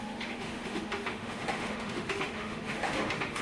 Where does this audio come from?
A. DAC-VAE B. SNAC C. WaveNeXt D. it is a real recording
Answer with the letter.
A